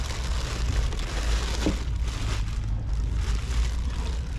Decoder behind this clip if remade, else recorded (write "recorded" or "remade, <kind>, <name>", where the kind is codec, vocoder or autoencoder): recorded